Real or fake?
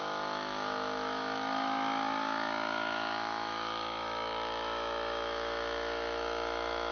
fake